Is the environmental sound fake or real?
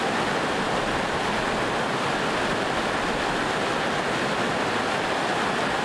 real